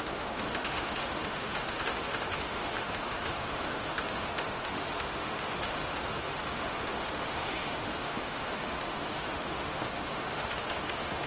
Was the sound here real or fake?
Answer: fake